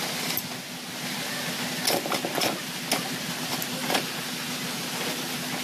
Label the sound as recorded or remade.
recorded